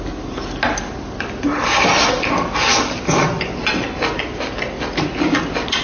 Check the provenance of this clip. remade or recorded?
recorded